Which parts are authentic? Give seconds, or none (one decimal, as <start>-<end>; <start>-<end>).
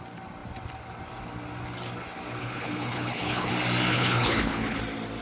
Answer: 0.0-2.4; 3.5-3.9; 4.8-5.2